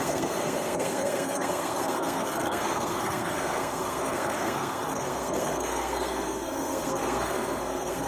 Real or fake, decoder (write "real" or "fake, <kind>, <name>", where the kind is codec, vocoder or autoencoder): fake, codec, SNAC